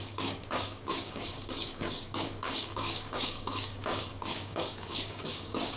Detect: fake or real fake